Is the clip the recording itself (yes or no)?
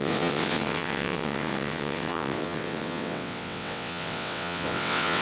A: no